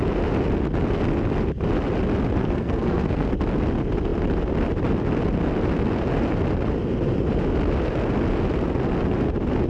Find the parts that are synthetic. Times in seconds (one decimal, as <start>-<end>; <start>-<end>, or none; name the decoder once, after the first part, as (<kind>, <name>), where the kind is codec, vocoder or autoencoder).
2.4-3.3 (codec, SNAC)

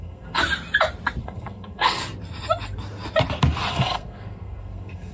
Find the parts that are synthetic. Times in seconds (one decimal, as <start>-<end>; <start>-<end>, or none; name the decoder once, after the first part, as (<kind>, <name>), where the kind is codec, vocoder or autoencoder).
0.0-0.4 (codec, SNAC); 1.2-2.0; 3.7-5.1

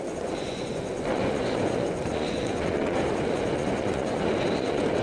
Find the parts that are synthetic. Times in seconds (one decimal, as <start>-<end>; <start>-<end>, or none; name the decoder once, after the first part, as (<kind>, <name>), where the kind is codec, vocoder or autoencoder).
0.0-5.0 (vocoder, Vocos)

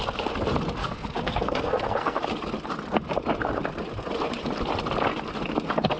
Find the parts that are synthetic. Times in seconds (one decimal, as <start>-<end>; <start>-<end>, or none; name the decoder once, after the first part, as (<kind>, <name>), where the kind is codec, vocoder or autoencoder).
0.8-2.2 (codec, SNAC)

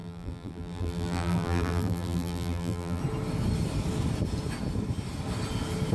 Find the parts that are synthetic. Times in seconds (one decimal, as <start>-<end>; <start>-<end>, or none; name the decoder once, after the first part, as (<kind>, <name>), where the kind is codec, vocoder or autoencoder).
0.0-3.0 (vocoder, BigVGAN v2)